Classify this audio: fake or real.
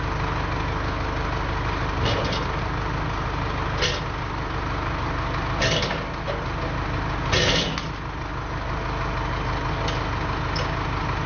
real